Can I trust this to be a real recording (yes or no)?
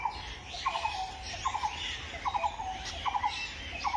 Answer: yes